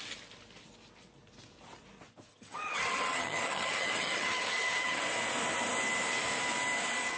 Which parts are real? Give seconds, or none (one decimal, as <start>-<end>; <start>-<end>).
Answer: 0.0-2.3; 5.0-7.2